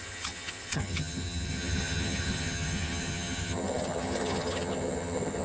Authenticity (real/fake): fake